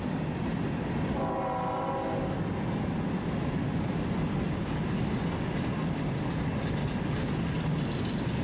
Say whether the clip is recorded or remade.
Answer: recorded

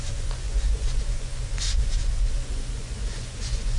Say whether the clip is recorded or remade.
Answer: remade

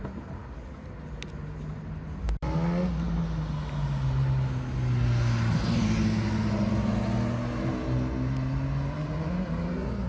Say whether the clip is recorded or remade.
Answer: recorded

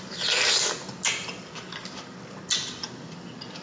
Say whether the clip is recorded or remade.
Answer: recorded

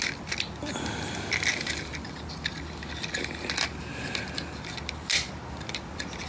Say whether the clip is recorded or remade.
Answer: recorded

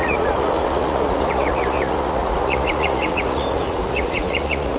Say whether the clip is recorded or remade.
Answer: remade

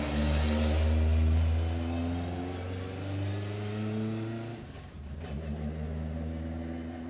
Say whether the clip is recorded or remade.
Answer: recorded